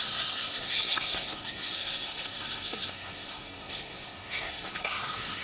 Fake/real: fake